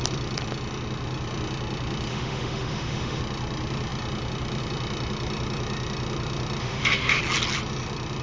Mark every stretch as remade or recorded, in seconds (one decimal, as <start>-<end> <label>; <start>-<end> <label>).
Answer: 0.0-2.1 recorded; 2.1-3.2 remade; 3.2-6.6 recorded; 6.6-7.2 remade; 7.2-8.2 recorded